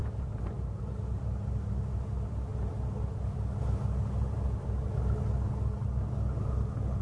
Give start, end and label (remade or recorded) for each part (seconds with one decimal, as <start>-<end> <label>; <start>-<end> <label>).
0.0-1.2 remade; 1.2-7.0 recorded